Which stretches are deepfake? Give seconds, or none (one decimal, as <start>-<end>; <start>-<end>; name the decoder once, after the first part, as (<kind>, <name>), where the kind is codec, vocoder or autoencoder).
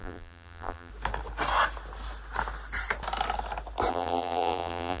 0.0-0.9 (vocoder, BigVGAN v2); 3.9-5.0